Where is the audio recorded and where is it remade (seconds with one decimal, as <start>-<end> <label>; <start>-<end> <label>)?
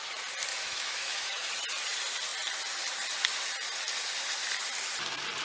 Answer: 0.0-0.5 recorded; 0.5-1.5 remade; 1.5-5.4 recorded